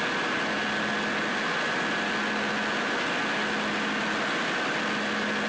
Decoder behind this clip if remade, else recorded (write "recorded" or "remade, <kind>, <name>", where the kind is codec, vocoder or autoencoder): recorded